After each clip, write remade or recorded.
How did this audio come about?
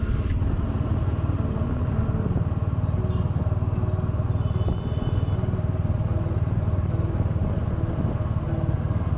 recorded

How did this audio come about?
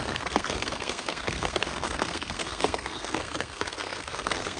remade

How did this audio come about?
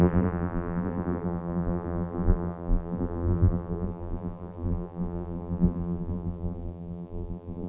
remade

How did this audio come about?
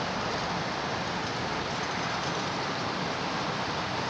recorded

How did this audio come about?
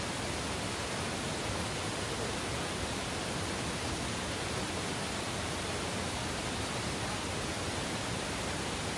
recorded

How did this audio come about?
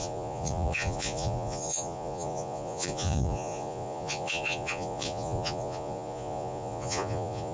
remade